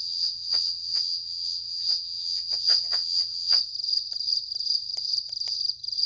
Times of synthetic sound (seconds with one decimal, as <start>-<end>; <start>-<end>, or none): 0.0-3.6